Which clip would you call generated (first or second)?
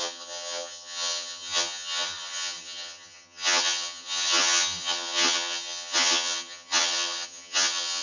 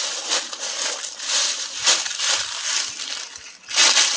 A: first